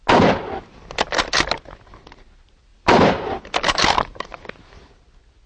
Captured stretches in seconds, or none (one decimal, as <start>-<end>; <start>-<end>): 0.0-2.7; 3.4-5.5